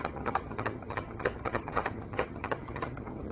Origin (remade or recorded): remade